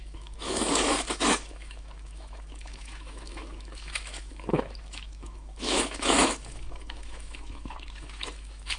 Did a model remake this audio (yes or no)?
yes